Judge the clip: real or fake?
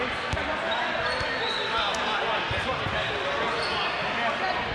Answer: real